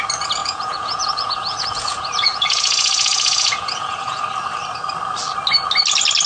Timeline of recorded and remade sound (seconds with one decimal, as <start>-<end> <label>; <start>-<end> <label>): 0.0-0.4 recorded; 0.4-4.2 remade; 4.2-6.3 recorded